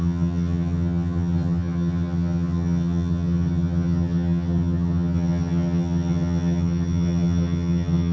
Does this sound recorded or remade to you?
remade